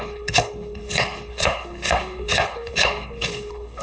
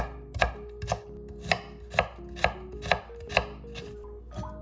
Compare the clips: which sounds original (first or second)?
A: second